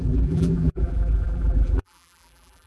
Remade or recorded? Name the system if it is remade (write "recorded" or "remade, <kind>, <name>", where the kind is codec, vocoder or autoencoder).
remade, vocoder, BigVGAN v2